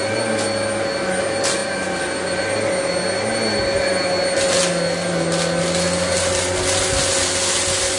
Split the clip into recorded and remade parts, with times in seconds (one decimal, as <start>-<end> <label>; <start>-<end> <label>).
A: 0.0-8.0 recorded